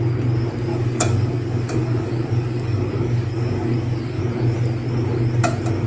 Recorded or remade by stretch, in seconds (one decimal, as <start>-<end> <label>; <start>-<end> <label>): 0.0-0.7 recorded; 0.7-4.2 remade; 4.2-5.9 recorded